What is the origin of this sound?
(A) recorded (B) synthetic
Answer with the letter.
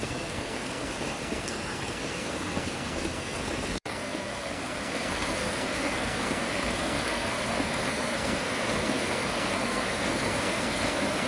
B